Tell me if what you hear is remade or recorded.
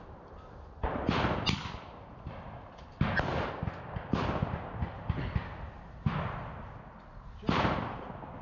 recorded